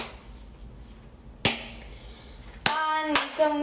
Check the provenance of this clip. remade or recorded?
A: recorded